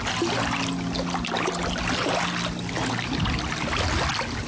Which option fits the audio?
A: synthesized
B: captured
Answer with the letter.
B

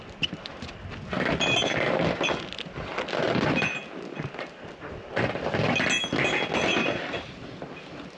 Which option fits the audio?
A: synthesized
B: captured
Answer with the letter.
B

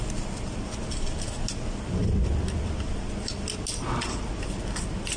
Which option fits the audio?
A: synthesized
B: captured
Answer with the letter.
B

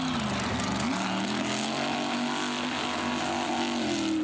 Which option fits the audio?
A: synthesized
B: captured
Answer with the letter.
B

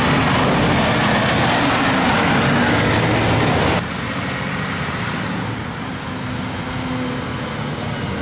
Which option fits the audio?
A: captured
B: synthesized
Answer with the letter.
A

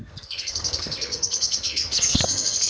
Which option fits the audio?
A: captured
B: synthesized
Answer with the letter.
B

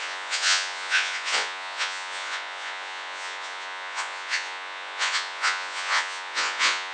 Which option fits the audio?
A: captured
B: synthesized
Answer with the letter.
B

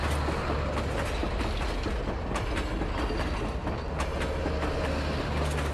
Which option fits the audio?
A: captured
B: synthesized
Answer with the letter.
A